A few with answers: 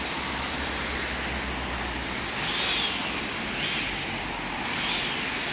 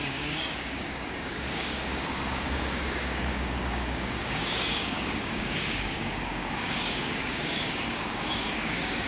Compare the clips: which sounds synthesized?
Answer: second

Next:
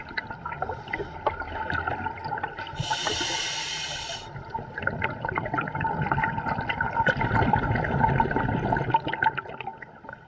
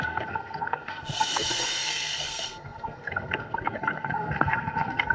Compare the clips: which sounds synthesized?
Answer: second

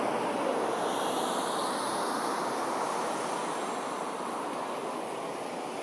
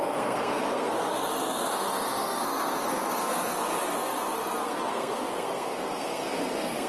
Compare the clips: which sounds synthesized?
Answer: second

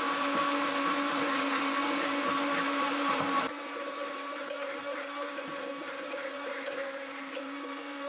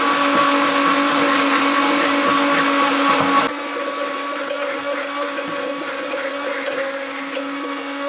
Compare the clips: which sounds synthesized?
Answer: first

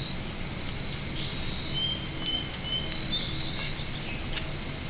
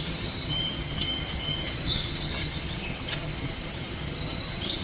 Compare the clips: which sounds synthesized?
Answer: second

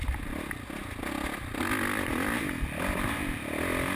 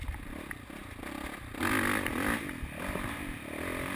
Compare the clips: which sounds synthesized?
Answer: second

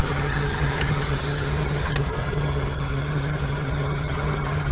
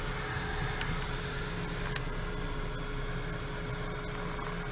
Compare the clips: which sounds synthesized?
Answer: first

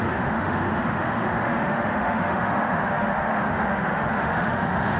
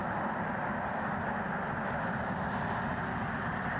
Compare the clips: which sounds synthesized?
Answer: first